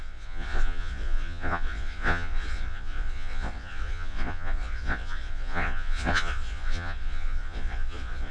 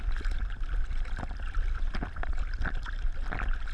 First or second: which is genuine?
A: second